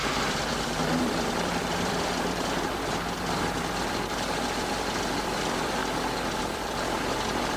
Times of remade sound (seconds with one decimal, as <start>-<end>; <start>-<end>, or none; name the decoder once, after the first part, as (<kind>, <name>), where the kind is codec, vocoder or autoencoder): 0.0-5.8 (vocoder, BigVGAN v2); 6.4-7.6

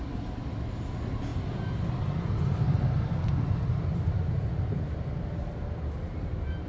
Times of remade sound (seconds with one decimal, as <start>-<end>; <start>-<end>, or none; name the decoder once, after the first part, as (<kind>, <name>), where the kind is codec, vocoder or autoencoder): none